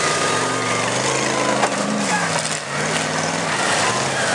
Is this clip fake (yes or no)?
no